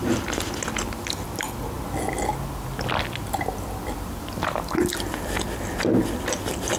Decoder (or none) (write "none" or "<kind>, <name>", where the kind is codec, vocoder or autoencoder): none